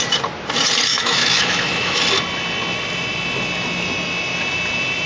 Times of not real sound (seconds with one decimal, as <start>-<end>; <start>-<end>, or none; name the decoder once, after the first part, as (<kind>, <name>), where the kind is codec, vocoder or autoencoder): 0.9-2.0 (autoencoder, DAC-VAE)